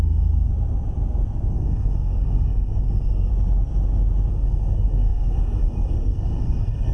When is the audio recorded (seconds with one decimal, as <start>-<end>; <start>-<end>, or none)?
0.5-1.5; 3.3-4.3